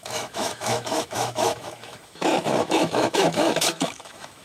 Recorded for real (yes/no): no